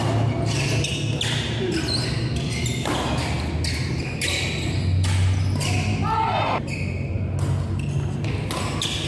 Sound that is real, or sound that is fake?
real